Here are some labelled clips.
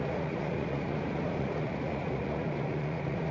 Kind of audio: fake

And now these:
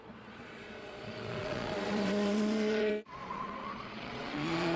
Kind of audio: fake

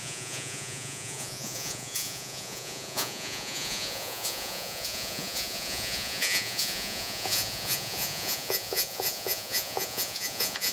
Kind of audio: fake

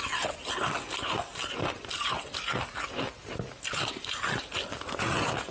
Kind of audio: real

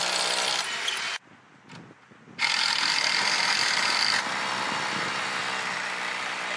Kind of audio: real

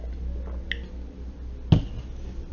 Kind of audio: real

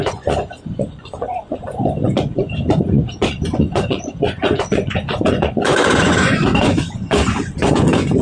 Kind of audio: fake